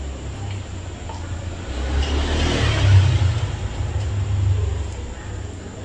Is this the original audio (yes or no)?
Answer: yes